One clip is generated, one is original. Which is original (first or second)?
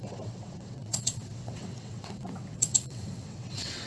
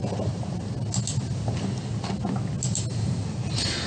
second